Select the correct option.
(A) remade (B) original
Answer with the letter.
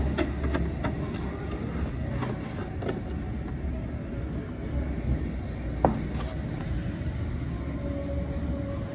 B